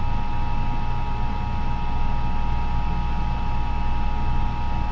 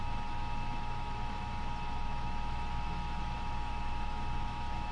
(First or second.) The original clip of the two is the first